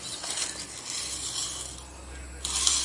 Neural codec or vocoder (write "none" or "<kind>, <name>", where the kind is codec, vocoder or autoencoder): none